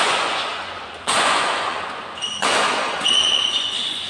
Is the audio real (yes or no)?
no